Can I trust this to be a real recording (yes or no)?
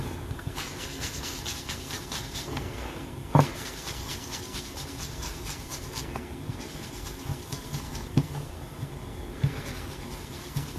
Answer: no